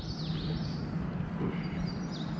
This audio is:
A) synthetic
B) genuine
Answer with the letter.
B